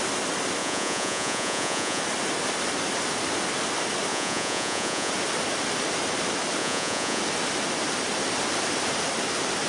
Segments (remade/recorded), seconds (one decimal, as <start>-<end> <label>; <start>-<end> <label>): 0.0-0.6 recorded; 0.6-2.0 remade; 2.0-4.1 recorded; 4.1-5.1 remade; 5.1-6.6 recorded; 6.6-7.2 remade; 7.2-9.7 recorded